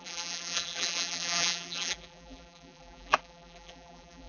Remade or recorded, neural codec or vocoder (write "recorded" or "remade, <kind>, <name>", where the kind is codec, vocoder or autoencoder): remade, vocoder, BigVGAN v2